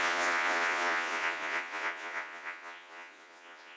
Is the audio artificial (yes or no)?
yes